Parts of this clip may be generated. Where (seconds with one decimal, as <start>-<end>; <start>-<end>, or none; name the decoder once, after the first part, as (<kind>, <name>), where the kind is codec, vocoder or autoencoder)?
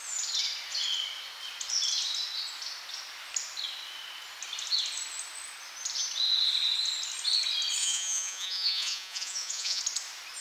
7.8-9.8 (vocoder, Vocos)